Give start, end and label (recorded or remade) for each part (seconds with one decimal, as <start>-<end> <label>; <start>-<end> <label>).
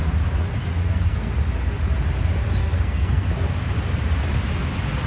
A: 0.0-0.8 recorded; 0.8-1.3 remade; 1.3-2.6 recorded; 2.6-3.3 remade; 3.3-5.1 recorded